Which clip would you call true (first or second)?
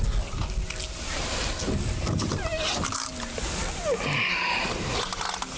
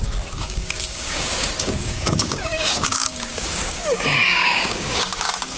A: first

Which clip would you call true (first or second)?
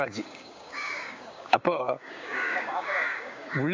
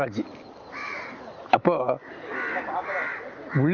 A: second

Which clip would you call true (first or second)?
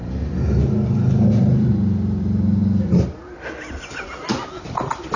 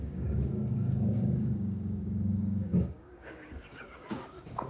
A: first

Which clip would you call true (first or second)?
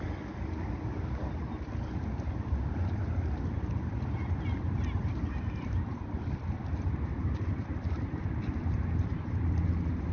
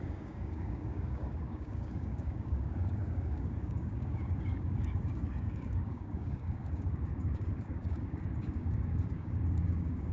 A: first